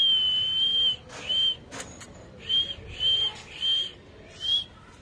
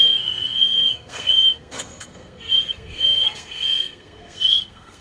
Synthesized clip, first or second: second